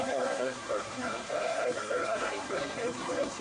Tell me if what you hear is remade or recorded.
remade